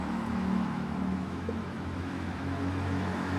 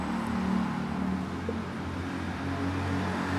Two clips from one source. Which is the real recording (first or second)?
second